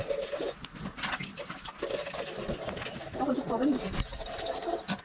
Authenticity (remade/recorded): recorded